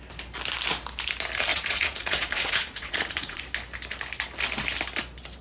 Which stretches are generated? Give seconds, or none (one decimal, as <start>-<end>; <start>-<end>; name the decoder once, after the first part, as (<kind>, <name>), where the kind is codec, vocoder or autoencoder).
1.5-3.4 (vocoder, Vocos)